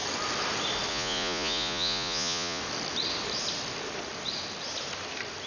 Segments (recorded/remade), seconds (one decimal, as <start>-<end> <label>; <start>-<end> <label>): 0.0-0.9 recorded; 0.9-2.6 remade; 2.6-5.5 recorded